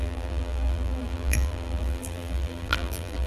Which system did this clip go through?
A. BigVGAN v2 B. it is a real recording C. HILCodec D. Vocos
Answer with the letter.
A